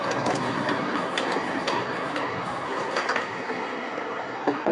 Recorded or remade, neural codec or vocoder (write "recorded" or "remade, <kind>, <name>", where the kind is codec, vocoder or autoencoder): remade, codec, SNAC